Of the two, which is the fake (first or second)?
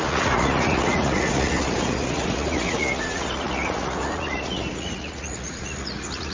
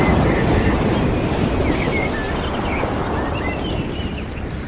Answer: first